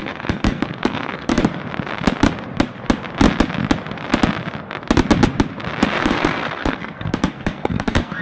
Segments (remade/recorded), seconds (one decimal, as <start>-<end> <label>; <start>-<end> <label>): 0.0-1.4 remade; 1.4-6.0 recorded; 6.0-8.2 remade